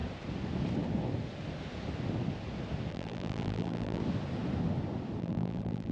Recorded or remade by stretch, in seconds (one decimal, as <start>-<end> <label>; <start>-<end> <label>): 0.0-2.9 recorded; 2.9-4.0 remade; 4.0-5.2 recorded; 5.2-5.9 remade